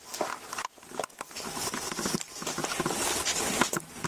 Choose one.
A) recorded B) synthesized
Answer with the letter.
A